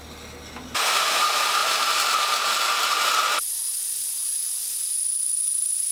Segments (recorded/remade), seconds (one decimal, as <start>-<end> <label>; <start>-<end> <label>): 0.0-5.9 recorded